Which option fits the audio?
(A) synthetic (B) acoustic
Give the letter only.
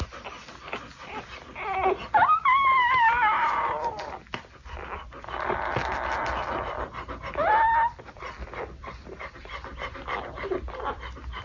B